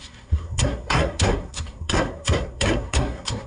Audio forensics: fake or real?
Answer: fake